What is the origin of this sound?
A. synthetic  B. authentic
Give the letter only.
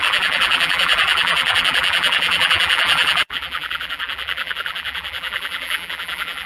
A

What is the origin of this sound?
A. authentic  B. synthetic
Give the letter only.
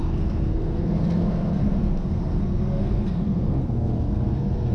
B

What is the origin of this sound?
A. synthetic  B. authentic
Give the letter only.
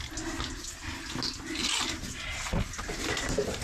B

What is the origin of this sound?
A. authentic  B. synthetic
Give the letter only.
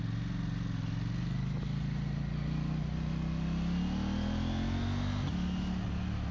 A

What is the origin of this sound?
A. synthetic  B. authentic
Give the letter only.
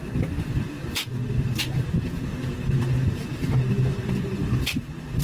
B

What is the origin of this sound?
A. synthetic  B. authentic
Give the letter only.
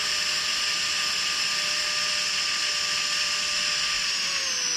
B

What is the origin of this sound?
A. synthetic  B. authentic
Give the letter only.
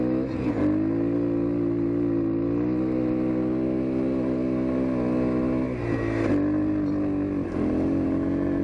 B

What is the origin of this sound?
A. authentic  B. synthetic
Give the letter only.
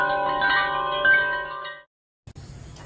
A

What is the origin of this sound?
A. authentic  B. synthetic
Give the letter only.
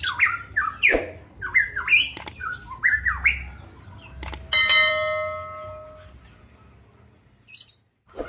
A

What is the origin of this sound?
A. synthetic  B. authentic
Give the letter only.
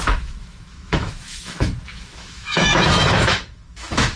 A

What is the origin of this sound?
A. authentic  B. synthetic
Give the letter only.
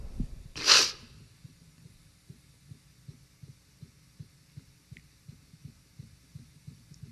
A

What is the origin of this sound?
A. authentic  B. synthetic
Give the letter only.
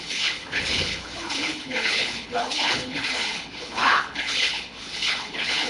B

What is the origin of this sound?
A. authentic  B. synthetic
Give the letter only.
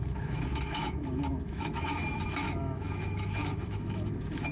B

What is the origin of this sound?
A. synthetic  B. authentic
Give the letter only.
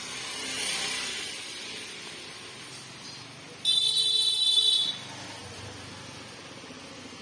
B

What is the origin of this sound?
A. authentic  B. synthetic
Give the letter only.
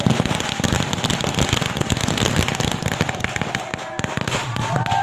A